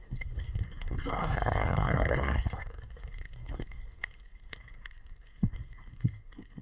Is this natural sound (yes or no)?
no